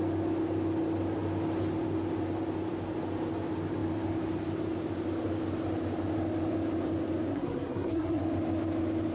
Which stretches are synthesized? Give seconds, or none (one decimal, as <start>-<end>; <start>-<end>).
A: 7.3-8.2